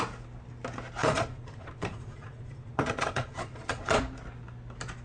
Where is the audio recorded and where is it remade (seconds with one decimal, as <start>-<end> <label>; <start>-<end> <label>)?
0.0-1.0 recorded; 1.0-4.0 remade; 4.0-5.0 recorded